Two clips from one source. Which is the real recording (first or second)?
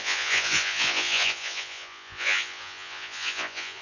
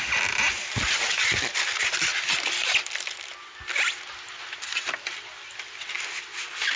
second